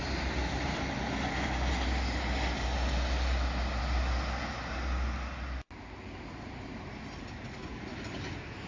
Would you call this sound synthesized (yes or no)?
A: no